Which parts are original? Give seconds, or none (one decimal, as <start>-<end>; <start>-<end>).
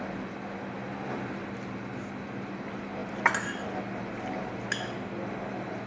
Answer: 0.0-5.9